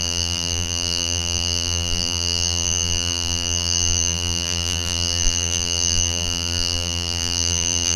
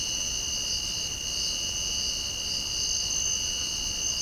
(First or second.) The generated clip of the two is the first